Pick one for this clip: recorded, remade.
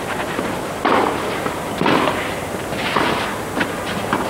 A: recorded